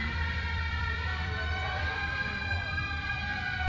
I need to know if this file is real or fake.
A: fake